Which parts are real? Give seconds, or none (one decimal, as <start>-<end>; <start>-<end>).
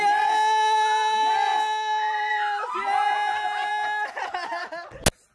0.0-5.3